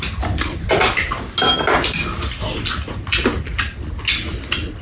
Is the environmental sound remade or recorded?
recorded